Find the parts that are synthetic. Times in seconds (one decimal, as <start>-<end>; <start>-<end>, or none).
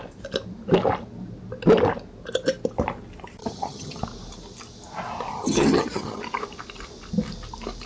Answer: 3.4-4.0; 5.3-6.2